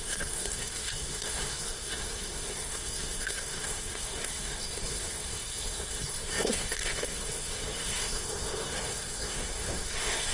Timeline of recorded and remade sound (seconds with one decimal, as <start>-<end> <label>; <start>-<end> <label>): 0.0-10.3 remade